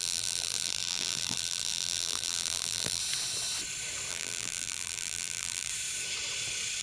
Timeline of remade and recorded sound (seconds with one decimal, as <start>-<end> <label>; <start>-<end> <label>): 0.0-3.0 remade; 3.0-4.1 recorded; 4.1-5.7 remade; 5.7-6.8 recorded